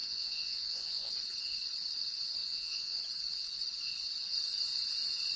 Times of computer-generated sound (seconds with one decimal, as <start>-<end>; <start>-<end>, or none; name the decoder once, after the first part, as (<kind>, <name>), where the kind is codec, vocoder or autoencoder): 0.0-1.1 (vocoder, Vocos); 2.4-3.0